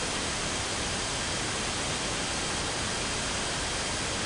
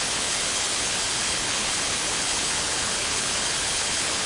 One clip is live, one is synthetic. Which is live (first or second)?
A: first